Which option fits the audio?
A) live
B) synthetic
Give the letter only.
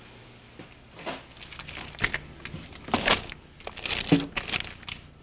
A